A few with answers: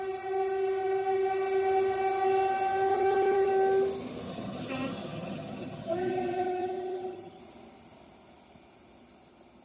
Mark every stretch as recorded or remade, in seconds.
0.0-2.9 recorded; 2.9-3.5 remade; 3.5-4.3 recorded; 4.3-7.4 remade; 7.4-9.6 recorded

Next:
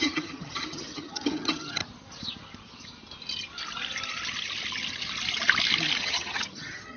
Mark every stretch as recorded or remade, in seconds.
0.0-1.8 remade; 1.8-6.0 recorded; 6.0-7.0 remade

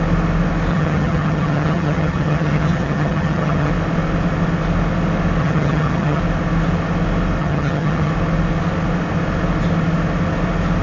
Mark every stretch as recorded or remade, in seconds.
0.0-0.7 recorded; 0.7-3.7 remade; 3.7-5.4 recorded; 5.4-6.2 remade; 6.2-7.4 recorded; 7.4-8.1 remade; 8.1-10.8 recorded